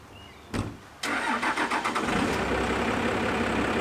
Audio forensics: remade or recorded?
recorded